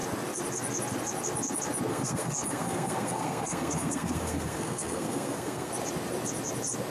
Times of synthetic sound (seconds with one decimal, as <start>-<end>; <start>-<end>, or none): 1.9-5.7